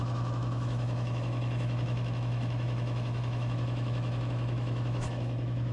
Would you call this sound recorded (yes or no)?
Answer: no